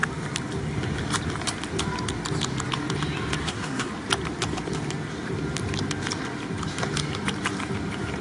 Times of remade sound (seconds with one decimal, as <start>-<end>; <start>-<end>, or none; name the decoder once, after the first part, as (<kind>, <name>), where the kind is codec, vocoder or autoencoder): 3.4-3.9 (codec, SNAC)

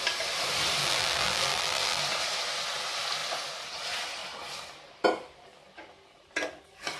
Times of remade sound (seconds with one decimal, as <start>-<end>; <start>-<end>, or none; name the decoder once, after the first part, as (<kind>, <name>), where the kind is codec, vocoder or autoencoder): 0.8-2.0 (vocoder, BigVGAN v2)

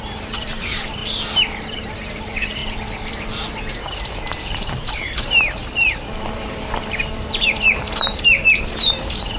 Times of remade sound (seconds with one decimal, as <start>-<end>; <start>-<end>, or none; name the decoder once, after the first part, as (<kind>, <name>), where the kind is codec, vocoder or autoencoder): 0.0-1.0 (vocoder, BigVGAN v2); 1.6-2.6; 4.2-9.4